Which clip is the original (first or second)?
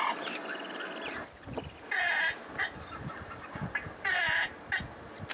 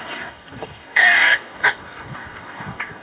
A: first